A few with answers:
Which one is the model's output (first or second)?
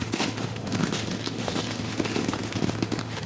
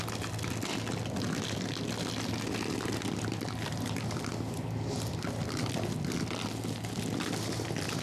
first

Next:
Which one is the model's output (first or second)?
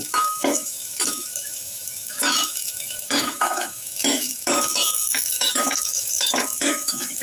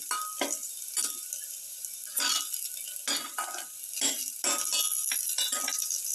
first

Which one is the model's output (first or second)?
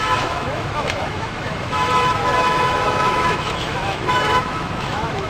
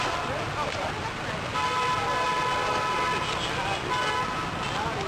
first